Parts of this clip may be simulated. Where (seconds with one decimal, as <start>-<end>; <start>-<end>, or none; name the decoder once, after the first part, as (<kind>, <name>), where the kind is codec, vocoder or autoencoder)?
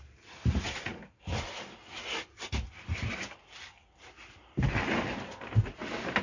none